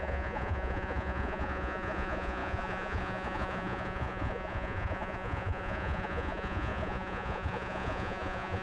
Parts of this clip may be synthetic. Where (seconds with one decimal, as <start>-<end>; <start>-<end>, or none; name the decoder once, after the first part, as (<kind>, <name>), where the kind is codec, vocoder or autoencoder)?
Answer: 0.0-8.6 (vocoder, Vocos)